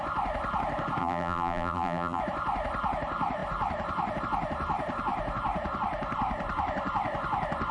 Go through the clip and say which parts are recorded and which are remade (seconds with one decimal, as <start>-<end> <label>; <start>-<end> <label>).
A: 0.0-1.0 recorded; 1.0-2.2 remade; 2.2-7.7 recorded